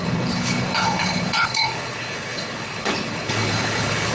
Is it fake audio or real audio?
fake